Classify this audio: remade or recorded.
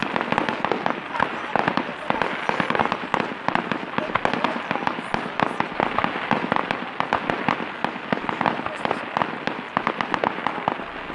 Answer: recorded